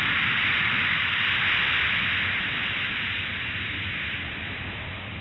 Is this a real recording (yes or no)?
yes